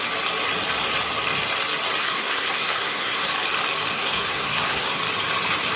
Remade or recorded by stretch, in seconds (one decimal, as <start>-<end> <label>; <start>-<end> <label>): 0.0-2.0 recorded; 2.0-3.2 remade; 3.2-3.9 recorded; 3.9-5.0 remade; 5.0-5.8 recorded